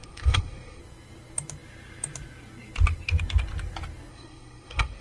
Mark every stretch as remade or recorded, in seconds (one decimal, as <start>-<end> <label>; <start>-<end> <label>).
0.0-0.8 remade; 0.8-4.1 recorded; 4.1-5.0 remade

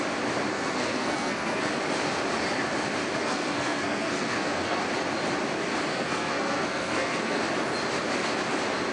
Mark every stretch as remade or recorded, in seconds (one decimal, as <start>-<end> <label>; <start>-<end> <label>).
0.0-0.5 recorded; 0.5-1.7 remade; 1.7-3.2 recorded; 3.2-4.8 remade; 4.8-5.9 recorded; 5.9-7.4 remade; 7.4-8.9 recorded

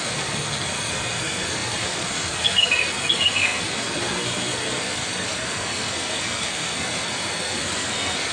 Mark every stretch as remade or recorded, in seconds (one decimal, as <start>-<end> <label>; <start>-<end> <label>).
0.0-8.3 remade

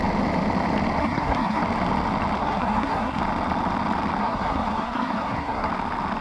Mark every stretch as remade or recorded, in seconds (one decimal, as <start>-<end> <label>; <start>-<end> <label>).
0.0-1.0 recorded; 1.0-1.6 remade; 1.6-2.4 recorded; 2.4-3.2 remade; 3.2-4.2 recorded; 4.2-5.7 remade; 5.7-6.2 recorded

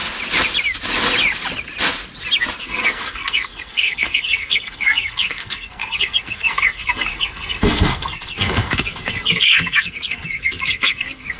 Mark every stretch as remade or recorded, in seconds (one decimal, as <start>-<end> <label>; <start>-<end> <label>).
0.0-2.6 recorded; 2.6-11.4 remade

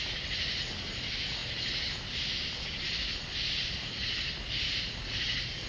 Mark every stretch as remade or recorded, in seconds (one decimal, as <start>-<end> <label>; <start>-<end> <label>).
0.0-5.7 recorded

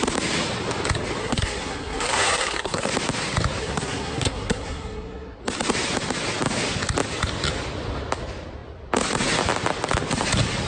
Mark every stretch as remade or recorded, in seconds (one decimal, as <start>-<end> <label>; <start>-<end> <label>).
0.0-1.2 recorded; 1.2-2.9 remade; 2.9-3.6 recorded; 3.6-5.4 remade; 5.4-10.7 recorded